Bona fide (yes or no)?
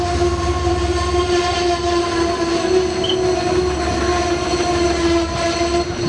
yes